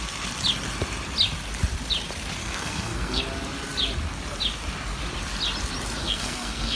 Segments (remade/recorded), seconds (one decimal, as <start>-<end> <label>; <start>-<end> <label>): 0.0-2.4 recorded; 2.4-3.2 remade; 3.2-6.0 recorded; 6.0-6.8 remade